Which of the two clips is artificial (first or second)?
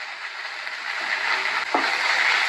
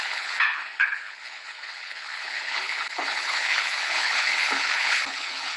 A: second